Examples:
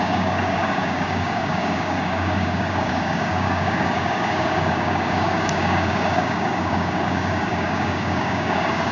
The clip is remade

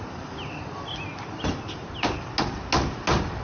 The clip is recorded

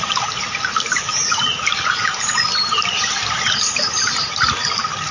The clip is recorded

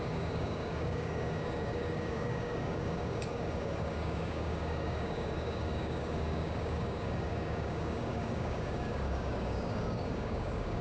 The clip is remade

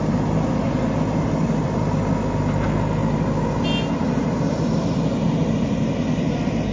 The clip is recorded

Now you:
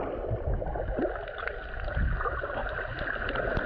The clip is recorded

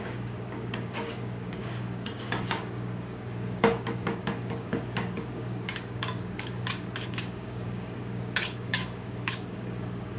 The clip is remade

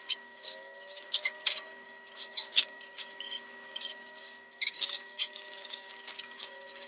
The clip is remade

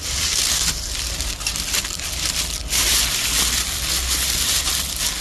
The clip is recorded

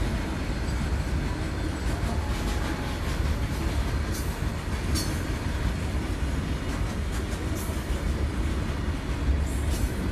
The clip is recorded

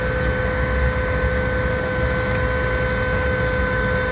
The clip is recorded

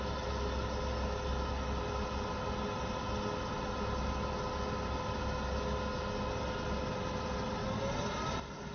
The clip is recorded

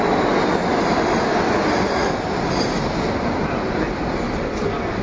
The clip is recorded